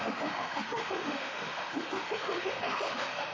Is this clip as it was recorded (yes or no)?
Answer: no